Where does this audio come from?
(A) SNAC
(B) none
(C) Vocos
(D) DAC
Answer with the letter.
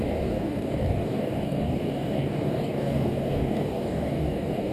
D